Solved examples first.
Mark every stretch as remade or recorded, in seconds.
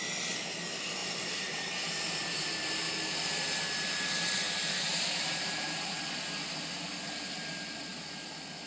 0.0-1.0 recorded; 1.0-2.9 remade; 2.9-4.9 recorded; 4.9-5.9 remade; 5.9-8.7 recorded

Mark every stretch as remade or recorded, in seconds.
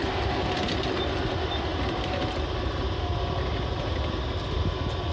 0.0-5.1 recorded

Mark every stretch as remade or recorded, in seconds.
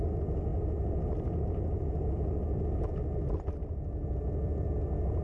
0.0-5.2 recorded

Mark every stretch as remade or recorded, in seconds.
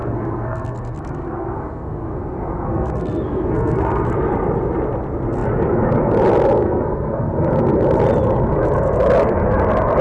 0.0-4.1 remade; 4.1-6.6 recorded; 6.6-7.3 remade; 7.3-10.0 recorded